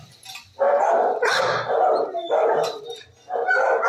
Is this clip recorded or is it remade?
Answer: remade